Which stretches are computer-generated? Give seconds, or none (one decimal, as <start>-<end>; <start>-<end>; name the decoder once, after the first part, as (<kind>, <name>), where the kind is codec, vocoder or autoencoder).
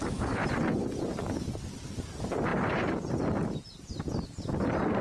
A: 0.7-1.7 (vocoder, Vocos)